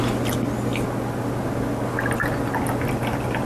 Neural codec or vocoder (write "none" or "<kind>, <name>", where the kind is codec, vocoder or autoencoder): none